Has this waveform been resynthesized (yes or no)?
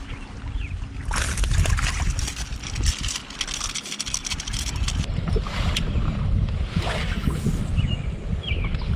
no